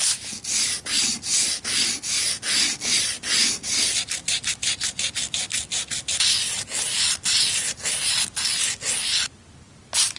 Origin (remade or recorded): recorded